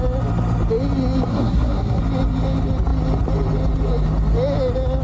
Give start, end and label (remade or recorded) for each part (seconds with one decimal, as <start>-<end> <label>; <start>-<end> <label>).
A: 0.0-1.3 recorded; 1.3-2.0 remade; 2.0-5.0 recorded